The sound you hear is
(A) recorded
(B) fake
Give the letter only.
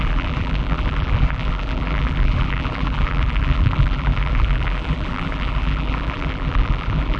B